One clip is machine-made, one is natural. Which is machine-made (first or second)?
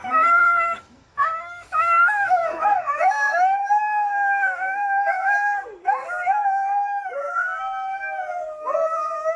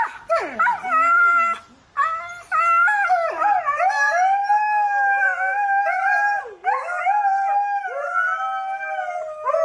first